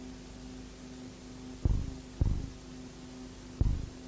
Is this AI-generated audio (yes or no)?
no